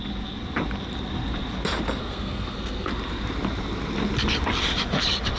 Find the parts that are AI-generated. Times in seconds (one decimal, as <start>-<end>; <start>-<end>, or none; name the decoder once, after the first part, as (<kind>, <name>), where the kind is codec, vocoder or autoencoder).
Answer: 2.0-2.9 (codec, SNAC)